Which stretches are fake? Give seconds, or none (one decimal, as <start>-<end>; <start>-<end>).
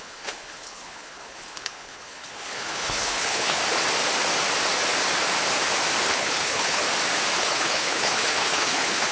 0.0-3.6; 6.0-6.8; 7.4-9.1